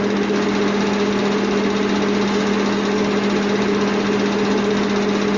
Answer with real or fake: real